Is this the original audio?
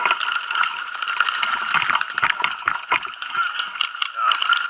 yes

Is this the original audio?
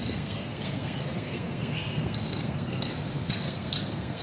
no